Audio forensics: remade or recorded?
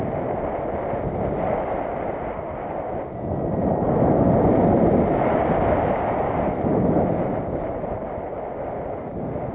recorded